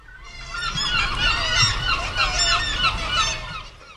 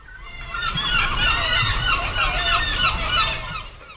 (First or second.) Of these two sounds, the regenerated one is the second